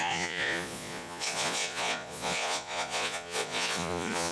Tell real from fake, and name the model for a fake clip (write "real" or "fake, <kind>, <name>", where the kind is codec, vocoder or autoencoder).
fake, vocoder, Vocos